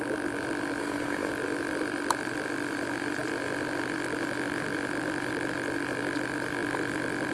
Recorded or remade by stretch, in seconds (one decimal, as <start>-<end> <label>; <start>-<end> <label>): 0.0-0.8 recorded; 0.8-1.3 remade; 1.3-7.3 recorded